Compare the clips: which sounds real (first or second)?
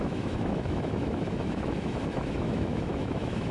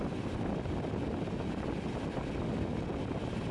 second